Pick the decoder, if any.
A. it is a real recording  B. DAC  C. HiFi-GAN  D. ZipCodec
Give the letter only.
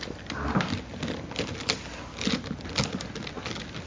A